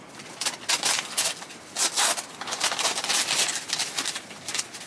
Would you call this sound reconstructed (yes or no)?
no